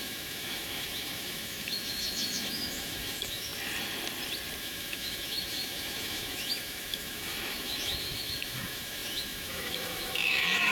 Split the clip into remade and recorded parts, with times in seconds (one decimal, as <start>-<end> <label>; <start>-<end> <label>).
0.0-3.5 remade; 3.5-4.6 recorded; 4.6-10.7 remade